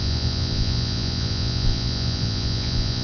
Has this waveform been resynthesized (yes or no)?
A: yes